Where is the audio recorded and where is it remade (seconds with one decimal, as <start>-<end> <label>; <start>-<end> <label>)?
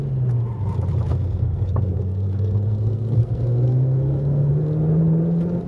0.0-1.1 recorded; 1.1-4.5 remade; 4.5-5.7 recorded